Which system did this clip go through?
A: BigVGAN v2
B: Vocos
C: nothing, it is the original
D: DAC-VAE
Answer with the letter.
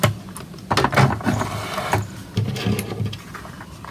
C